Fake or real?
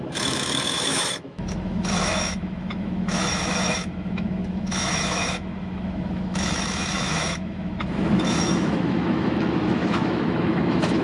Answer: fake